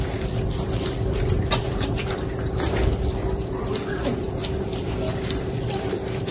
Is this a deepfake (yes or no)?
yes